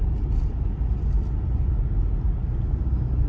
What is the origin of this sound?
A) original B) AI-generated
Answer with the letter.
A